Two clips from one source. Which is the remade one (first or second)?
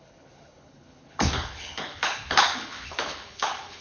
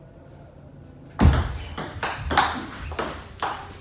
first